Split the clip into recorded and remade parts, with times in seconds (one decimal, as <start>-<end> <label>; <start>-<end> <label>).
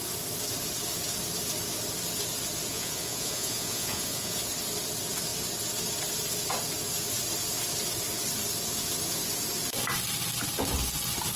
0.0-2.7 recorded; 2.7-4.4 remade; 4.4-11.4 recorded